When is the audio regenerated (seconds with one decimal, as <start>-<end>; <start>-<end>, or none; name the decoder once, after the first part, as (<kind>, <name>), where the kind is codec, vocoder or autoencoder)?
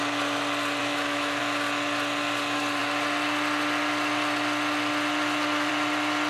0.8-1.4 (autoencoder, DAC-VAE)